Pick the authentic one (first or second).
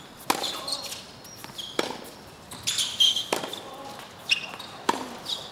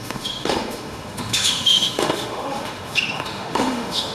first